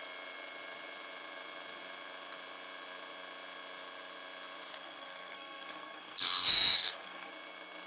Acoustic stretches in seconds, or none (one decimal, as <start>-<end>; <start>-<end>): 0.0-4.7; 7.3-7.9